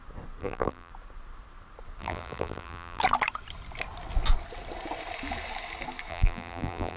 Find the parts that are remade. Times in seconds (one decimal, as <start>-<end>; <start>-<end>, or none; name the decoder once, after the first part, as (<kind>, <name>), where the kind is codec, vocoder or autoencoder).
0.4-0.9 (vocoder, BigVGAN v2); 2.0-3.0; 6.1-7.0